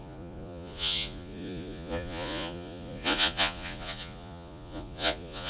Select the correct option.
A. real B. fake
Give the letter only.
B